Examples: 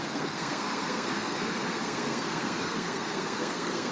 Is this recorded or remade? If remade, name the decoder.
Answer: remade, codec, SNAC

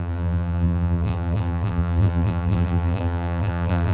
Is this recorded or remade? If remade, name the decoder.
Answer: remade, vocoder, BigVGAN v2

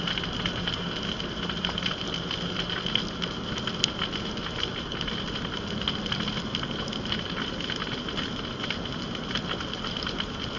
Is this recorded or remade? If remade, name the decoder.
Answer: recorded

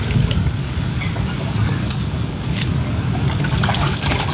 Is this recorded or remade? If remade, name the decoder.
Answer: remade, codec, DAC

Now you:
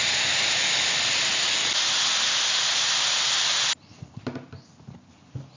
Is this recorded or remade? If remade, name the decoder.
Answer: recorded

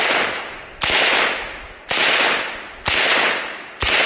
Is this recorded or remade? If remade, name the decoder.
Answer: recorded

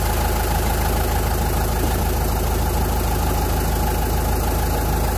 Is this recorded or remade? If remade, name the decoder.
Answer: recorded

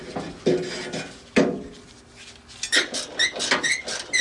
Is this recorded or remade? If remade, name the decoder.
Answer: recorded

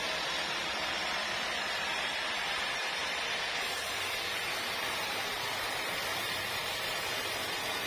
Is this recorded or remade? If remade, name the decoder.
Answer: remade, vocoder, BigVGAN v2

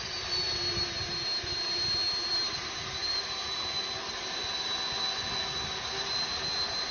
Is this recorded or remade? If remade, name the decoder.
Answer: recorded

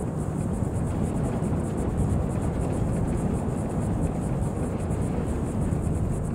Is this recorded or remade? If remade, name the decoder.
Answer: recorded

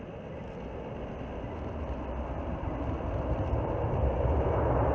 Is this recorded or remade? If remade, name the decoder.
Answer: recorded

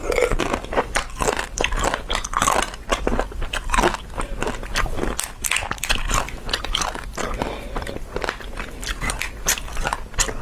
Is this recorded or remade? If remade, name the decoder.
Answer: recorded